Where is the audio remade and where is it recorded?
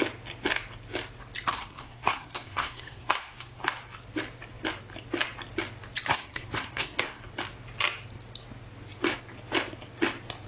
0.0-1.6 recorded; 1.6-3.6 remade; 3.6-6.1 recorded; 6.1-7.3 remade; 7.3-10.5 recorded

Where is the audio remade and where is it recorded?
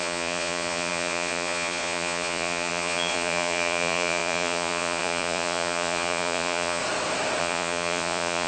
0.0-6.8 remade; 6.8-7.4 recorded; 7.4-8.5 remade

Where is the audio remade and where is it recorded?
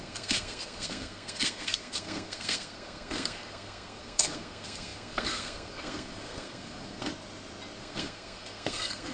0.0-7.1 remade; 7.1-7.8 recorded; 7.8-9.1 remade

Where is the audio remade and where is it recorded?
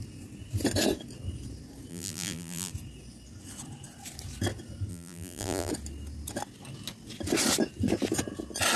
0.0-1.9 recorded; 1.9-2.7 remade; 2.7-4.9 recorded; 4.9-5.7 remade; 5.7-8.8 recorded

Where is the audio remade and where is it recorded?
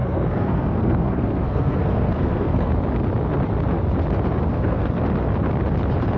0.0-2.7 remade; 2.7-4.5 recorded; 4.5-5.0 remade; 5.0-6.2 recorded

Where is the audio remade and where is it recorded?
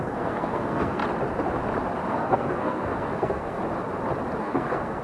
0.0-1.0 remade; 1.0-2.1 recorded; 2.1-3.6 remade; 3.6-4.4 recorded; 4.4-5.0 remade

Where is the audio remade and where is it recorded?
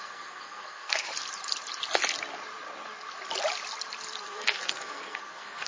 0.0-1.1 remade; 1.1-4.2 recorded; 4.2-5.7 remade